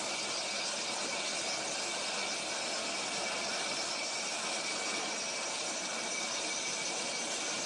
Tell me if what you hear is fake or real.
real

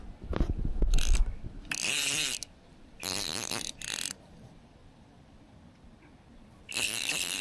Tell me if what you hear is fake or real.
fake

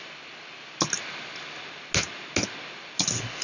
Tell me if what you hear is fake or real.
real